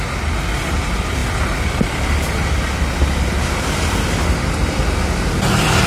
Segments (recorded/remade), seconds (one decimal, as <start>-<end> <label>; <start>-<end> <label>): 0.0-5.9 recorded